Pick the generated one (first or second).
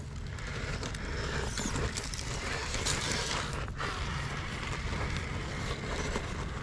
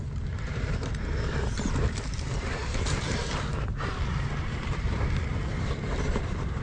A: second